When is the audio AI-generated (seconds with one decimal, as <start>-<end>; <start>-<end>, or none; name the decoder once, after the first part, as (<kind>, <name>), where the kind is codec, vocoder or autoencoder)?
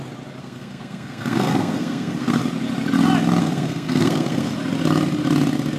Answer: 0.4-2.4 (codec, SNAC); 3.4-4.5